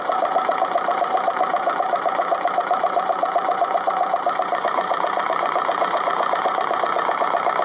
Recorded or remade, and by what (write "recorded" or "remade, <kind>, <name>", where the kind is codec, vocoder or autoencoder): remade, vocoder, Vocos